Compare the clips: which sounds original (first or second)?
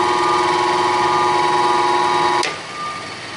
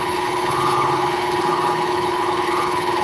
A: first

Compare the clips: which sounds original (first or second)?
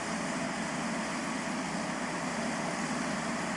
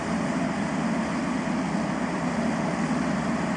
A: first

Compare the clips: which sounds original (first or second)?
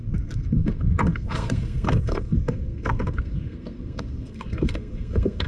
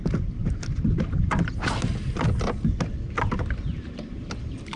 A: second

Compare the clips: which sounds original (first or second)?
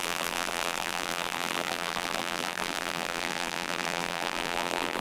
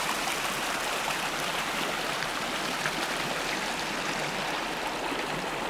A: second